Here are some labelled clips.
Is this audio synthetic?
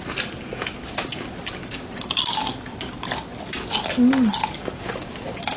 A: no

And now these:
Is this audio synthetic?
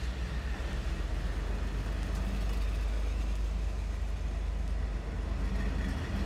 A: no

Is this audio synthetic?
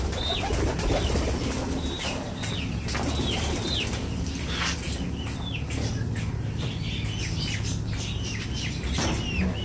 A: no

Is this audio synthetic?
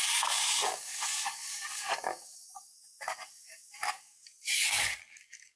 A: yes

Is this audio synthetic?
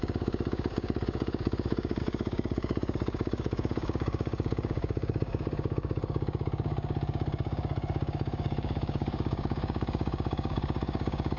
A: yes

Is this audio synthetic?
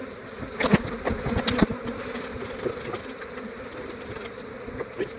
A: no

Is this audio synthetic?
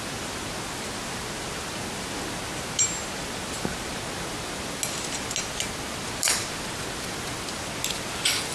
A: no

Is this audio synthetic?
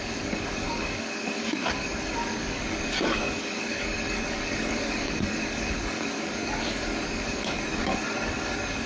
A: yes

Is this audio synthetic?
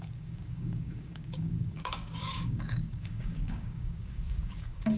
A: yes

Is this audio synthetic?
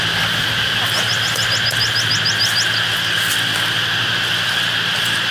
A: no